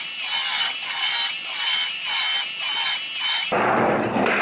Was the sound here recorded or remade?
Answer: recorded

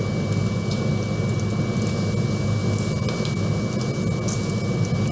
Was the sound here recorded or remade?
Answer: recorded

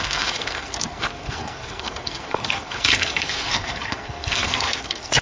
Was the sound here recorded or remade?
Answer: remade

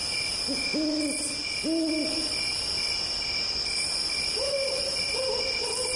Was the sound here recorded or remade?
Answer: recorded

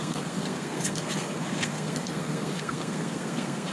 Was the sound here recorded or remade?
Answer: remade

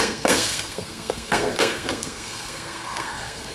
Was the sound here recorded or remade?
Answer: remade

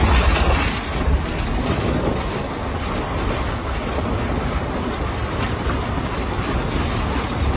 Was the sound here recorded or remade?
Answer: recorded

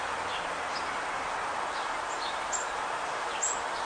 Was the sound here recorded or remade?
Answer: recorded